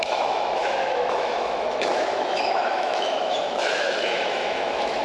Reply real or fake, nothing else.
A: fake